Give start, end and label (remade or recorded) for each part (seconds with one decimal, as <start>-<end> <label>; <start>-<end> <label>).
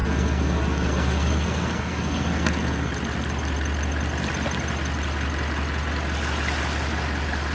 0.0-2.9 remade; 2.9-7.5 recorded